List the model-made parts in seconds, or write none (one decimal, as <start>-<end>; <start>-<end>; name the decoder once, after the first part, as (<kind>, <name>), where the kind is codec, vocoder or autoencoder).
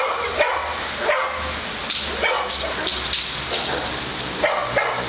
0.0-0.6 (vocoder, BigVGAN v2); 3.7-5.1